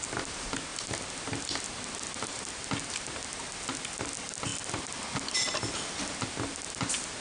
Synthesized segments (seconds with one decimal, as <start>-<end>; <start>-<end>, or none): 0.7-2.5